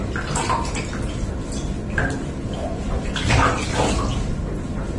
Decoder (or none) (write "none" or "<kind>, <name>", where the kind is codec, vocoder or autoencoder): none